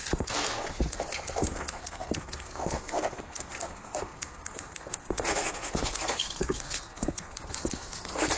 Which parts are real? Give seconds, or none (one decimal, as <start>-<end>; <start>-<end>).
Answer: none